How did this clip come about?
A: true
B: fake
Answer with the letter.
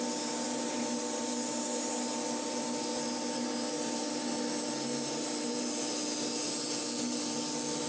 A